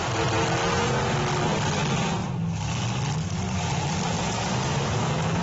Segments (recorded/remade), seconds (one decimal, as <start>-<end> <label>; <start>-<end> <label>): 0.0-4.7 recorded; 4.7-5.4 remade